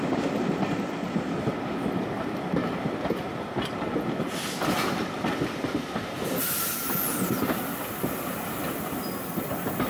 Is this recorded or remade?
recorded